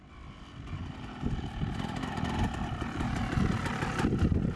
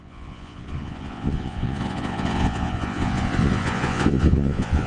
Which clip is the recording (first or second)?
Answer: first